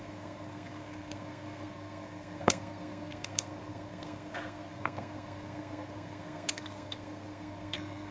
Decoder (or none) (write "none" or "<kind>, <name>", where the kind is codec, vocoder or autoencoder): codec, SNAC